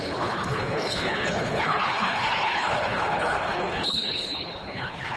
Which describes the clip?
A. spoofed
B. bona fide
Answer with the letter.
A